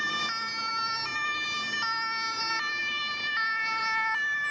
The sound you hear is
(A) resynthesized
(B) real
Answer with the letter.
B